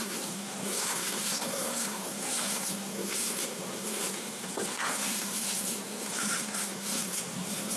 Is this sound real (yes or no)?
no